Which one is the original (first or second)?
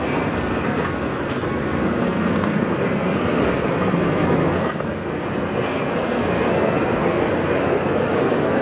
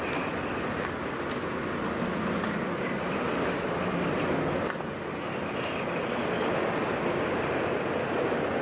second